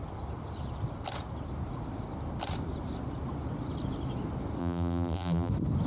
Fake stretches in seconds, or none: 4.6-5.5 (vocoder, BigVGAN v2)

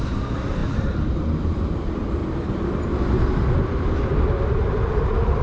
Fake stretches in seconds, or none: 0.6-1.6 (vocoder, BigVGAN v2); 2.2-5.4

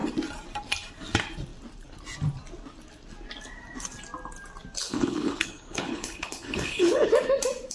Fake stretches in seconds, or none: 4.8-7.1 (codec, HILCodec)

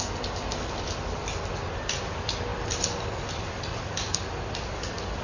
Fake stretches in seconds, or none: none

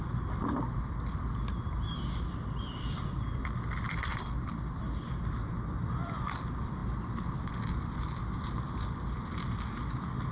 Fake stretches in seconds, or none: 0.0-4.1 (vocoder, BigVGAN v2); 4.8-6.8; 7.7-10.3

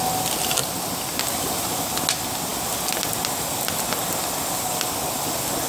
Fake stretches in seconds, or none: none